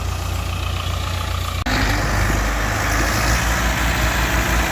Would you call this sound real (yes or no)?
yes